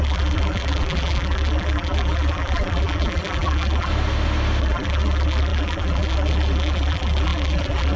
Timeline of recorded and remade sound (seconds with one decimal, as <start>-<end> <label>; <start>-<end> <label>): 0.0-3.9 remade; 3.9-4.6 recorded; 4.6-8.0 remade